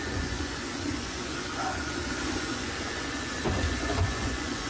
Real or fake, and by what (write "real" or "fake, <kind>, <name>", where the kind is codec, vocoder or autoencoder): fake, vocoder, Vocos